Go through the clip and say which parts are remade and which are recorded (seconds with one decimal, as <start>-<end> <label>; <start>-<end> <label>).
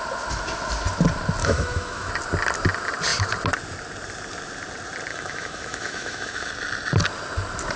0.0-1.4 recorded; 1.4-2.1 remade; 2.1-5.1 recorded; 5.1-6.5 remade; 6.5-7.8 recorded